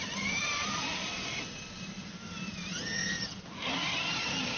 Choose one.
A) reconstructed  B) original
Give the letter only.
B